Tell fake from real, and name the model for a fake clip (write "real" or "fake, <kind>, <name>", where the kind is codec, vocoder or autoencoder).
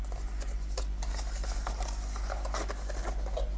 real